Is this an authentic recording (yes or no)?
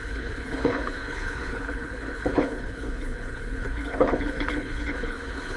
no